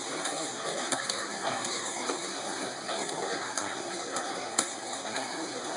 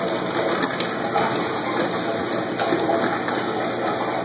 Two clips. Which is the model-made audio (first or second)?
first